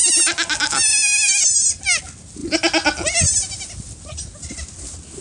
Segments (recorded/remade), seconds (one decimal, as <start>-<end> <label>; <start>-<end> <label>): 0.0-5.2 recorded